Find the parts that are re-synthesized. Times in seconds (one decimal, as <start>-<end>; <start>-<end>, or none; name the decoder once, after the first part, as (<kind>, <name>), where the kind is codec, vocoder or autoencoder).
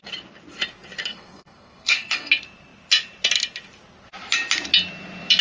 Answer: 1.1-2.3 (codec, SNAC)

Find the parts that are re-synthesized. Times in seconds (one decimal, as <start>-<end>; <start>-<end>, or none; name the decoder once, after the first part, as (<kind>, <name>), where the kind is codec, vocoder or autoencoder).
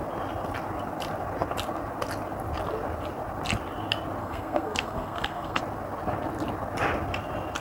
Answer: 4.2-5.6 (codec, SNAC)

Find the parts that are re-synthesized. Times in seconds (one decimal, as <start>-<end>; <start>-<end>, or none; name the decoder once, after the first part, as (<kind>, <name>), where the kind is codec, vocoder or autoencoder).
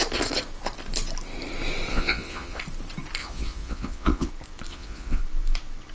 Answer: 1.9-2.6 (vocoder, Vocos); 3.2-4.3; 4.7-5.2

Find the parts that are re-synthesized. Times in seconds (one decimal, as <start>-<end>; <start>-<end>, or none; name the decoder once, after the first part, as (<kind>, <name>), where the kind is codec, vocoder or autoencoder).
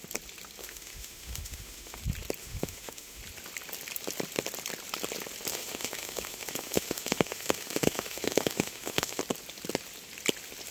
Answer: 0.6-2.0 (autoencoder, DAC-VAE); 2.4-3.2; 5.5-9.2